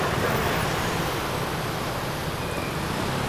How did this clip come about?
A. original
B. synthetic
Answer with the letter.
A